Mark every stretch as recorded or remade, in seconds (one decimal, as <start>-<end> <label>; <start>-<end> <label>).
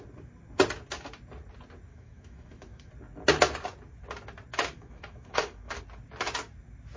0.0-1.9 recorded; 1.9-2.9 remade; 2.9-4.5 recorded; 4.5-5.8 remade; 5.8-7.0 recorded